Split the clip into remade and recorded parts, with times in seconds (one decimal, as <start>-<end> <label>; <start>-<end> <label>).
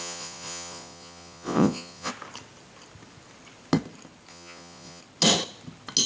0.0-2.1 remade; 2.1-4.3 recorded; 4.3-5.0 remade; 5.0-6.1 recorded